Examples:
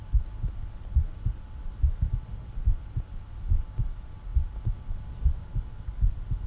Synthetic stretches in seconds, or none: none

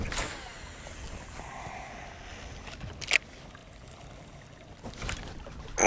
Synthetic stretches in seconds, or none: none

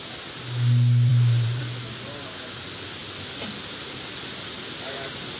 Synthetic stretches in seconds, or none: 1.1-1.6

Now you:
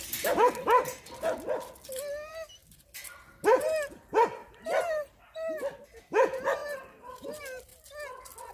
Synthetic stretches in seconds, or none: 4.4-5.2; 6.6-7.3

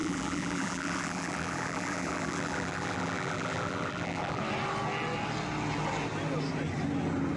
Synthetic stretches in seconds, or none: 0.0-4.4

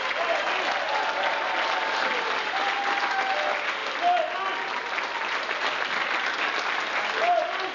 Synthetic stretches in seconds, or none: 3.8-4.8

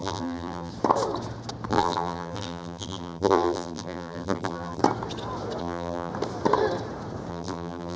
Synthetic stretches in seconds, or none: 0.0-0.7; 1.7-4.8; 5.6-6.1; 7.3-8.0